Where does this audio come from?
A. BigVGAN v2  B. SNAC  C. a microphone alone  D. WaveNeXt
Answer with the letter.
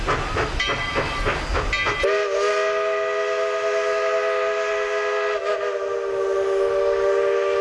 C